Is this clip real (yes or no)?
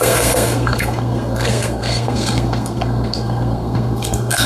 no